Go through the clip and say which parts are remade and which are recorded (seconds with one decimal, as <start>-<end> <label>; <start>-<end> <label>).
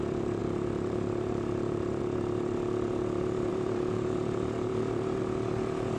0.0-0.4 recorded; 0.4-2.0 remade; 2.0-3.5 recorded; 3.5-5.2 remade; 5.2-6.0 recorded